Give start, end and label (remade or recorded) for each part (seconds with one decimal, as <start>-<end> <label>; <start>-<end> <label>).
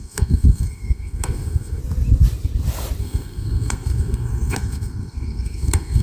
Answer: 0.0-1.8 remade; 1.8-3.0 recorded; 3.0-6.0 remade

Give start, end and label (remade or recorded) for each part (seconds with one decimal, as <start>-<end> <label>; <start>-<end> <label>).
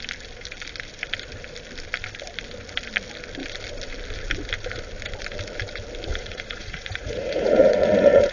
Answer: 0.0-6.1 recorded; 6.1-8.3 remade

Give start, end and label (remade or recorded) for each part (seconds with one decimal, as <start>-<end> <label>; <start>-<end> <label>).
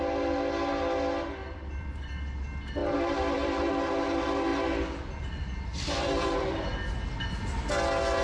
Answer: 0.0-1.4 recorded; 1.4-2.1 remade; 2.1-2.8 recorded; 2.8-3.7 remade; 3.7-5.7 recorded; 5.7-6.9 remade; 6.9-8.2 recorded